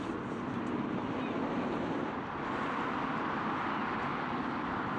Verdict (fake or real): real